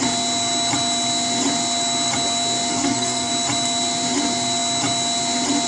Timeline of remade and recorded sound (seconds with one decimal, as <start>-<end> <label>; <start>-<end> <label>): 0.0-2.7 recorded; 2.7-3.3 remade; 3.3-5.7 recorded